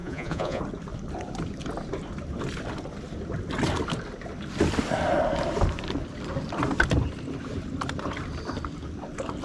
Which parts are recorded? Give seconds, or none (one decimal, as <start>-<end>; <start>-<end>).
0.6-9.4